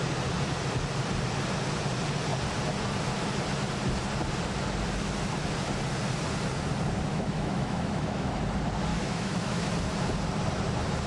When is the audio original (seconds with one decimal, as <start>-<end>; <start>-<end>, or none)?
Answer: 0.0-7.1; 8.4-8.9; 9.7-11.1